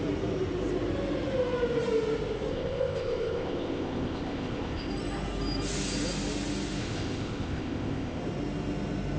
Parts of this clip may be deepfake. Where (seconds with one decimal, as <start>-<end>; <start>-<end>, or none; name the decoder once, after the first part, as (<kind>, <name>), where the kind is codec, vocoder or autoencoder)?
2.5-4.9 (codec, ZipCodec); 6.8-8.2